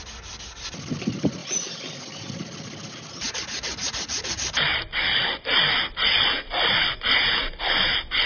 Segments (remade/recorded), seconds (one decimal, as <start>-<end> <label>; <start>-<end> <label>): 0.0-8.3 recorded